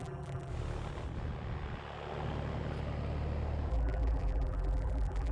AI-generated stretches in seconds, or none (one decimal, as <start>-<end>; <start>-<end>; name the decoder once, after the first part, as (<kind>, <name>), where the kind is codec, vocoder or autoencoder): 0.0-0.5 (vocoder, BigVGAN v2); 3.7-5.3